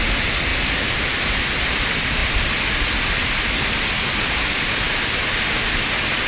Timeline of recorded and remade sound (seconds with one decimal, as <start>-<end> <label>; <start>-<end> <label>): 0.0-6.3 recorded